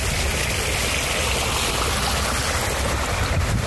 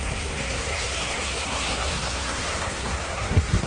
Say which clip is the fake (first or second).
second